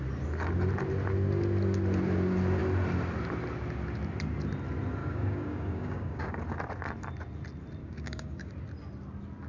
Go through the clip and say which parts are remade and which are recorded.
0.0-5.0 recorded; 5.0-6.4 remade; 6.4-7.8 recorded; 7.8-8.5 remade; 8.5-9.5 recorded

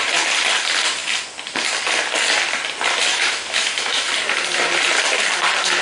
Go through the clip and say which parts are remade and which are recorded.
0.0-3.1 recorded; 3.1-4.1 remade; 4.1-5.8 recorded

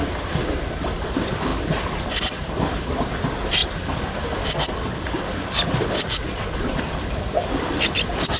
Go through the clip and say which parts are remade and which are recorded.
0.0-8.4 recorded

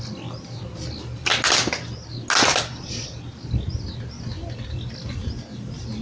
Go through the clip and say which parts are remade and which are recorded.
0.0-6.0 recorded

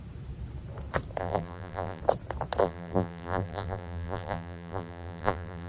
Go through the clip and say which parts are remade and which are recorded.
0.0-1.2 recorded; 1.2-2.0 remade; 2.0-2.6 recorded; 2.6-5.7 remade

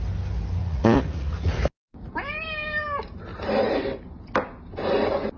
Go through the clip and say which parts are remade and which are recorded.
0.0-0.6 recorded; 0.6-1.5 remade; 1.5-5.4 recorded